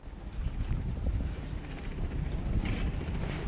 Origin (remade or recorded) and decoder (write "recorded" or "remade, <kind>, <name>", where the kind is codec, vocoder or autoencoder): recorded